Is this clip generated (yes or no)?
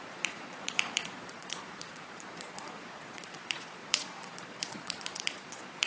yes